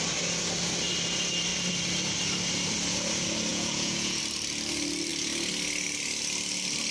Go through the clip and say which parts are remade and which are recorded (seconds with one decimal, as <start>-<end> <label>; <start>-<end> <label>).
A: 0.0-3.5 recorded; 3.5-4.2 remade; 4.2-6.9 recorded